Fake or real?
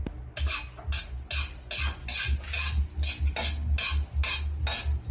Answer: real